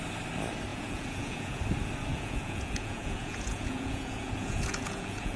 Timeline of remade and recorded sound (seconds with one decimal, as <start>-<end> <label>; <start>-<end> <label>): 0.0-0.7 recorded; 0.7-1.6 remade; 1.6-2.1 recorded; 2.1-5.4 remade